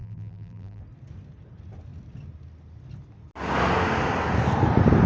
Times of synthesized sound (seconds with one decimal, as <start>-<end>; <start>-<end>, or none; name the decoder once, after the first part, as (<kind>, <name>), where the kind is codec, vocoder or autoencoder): 0.0-0.8 (vocoder, BigVGAN v2)